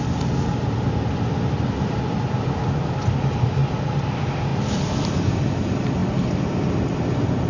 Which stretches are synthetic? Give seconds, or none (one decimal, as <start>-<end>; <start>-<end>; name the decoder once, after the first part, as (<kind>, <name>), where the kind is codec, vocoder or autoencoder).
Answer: none